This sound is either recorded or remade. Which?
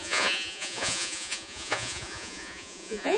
remade